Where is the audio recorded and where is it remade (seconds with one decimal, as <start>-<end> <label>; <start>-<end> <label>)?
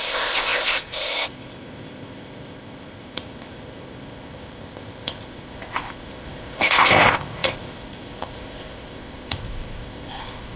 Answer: 0.0-10.6 remade